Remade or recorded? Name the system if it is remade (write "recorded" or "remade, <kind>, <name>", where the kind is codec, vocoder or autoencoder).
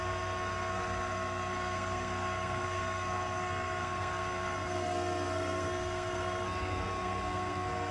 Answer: remade, codec, SNAC